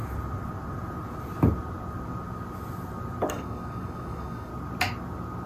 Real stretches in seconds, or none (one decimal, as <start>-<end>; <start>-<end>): 0.0-3.3; 4.5-5.5